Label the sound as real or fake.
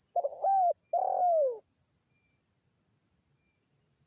real